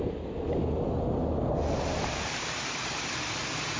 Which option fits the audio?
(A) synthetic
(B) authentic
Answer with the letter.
B